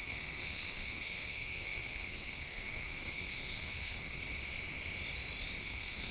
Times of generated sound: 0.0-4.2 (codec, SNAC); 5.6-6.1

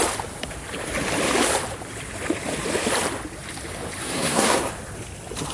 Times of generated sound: 4.0-4.7 (codec, SNAC)

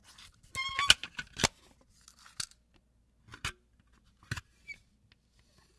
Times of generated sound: none

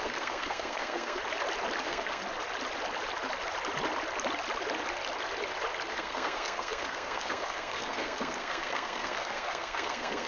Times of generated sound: 0.0-1.2 (codec, SNAC); 1.8-2.2; 5.9-10.3

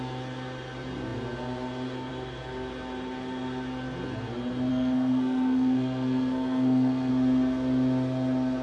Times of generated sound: 4.7-7.1 (codec, SNAC)

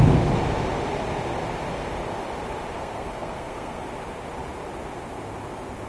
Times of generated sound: 2.8-3.8 (codec, SNAC)

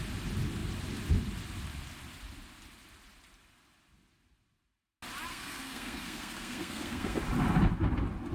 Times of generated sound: 5.3-7.2 (codec, SNAC)

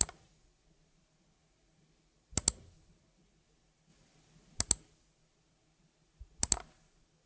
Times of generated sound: none